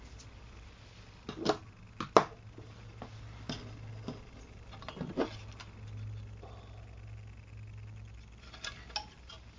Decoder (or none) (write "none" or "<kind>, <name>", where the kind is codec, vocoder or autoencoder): none